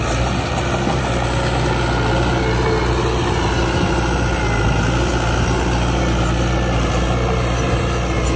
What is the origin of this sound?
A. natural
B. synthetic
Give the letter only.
A